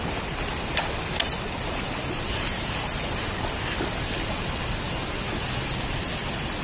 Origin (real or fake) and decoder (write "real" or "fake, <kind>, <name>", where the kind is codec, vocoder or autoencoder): real